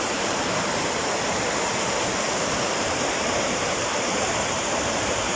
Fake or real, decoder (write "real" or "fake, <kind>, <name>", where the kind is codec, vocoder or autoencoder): fake, vocoder, BigVGAN v2